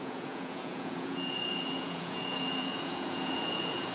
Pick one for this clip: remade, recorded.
remade